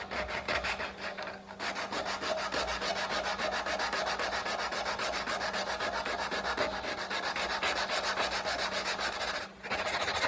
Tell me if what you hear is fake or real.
real